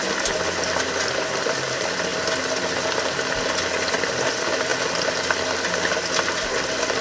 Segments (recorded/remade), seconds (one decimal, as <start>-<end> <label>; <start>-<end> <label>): 0.0-2.1 remade; 2.1-4.1 recorded; 4.1-4.7 remade; 4.7-7.0 recorded